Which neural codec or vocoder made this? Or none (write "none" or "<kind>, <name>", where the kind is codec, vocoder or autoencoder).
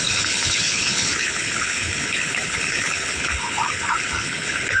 codec, HILCodec